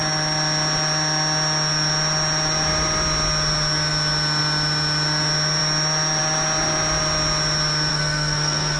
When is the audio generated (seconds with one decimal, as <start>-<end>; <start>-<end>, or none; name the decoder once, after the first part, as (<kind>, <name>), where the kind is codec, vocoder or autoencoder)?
7.9-8.8 (codec, SNAC)